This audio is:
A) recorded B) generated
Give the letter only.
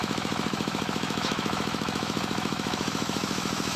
B